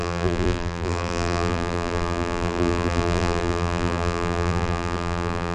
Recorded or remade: remade